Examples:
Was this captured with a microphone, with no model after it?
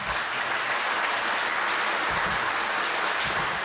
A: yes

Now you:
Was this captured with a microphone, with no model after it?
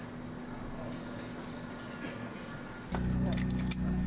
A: yes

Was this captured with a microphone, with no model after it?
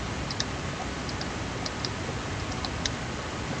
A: yes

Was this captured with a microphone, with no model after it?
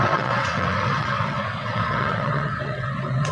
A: no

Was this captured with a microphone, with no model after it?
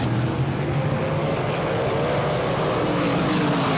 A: yes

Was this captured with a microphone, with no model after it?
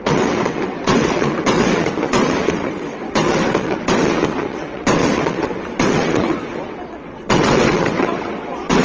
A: no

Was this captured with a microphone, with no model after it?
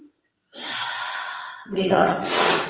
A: no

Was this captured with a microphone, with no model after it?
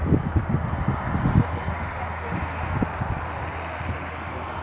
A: yes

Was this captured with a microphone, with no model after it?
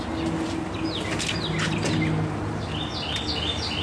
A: yes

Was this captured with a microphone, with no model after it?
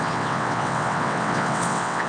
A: no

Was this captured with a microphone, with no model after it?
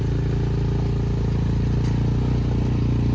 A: yes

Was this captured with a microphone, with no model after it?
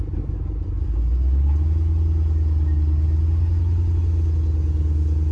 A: yes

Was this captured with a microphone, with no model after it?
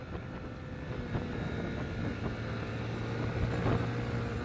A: yes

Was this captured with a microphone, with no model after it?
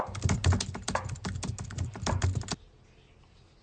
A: yes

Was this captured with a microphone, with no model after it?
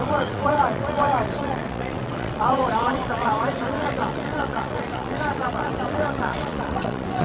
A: no